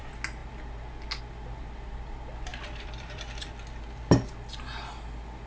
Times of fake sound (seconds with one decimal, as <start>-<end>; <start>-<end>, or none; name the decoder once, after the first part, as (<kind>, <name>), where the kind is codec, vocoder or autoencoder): 2.5-3.5 (vocoder, BigVGAN v2)